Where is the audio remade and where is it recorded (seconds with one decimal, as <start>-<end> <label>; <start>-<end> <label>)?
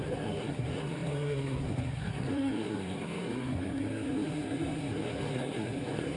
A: 0.0-6.2 remade